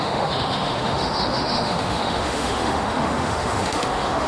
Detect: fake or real fake